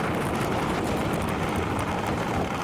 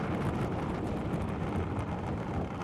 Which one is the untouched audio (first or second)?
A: second